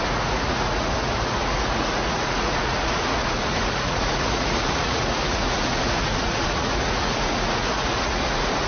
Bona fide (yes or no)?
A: no